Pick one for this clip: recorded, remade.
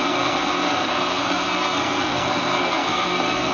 remade